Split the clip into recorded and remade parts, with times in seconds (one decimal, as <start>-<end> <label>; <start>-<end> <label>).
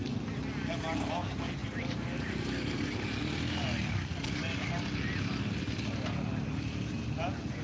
0.0-1.6 recorded; 1.6-2.9 remade; 2.9-7.6 recorded